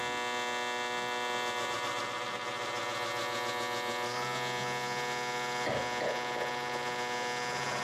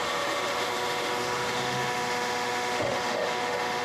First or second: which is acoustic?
first